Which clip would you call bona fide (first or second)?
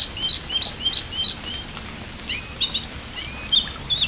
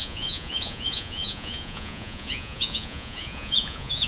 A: first